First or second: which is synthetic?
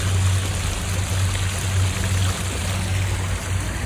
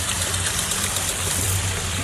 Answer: second